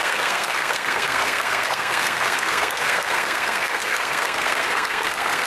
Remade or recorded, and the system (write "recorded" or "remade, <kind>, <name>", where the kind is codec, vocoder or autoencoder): remade, codec, SNAC